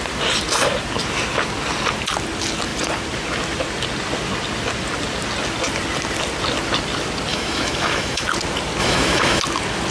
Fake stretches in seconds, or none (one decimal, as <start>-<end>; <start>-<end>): 7.3-8.2; 8.8-9.4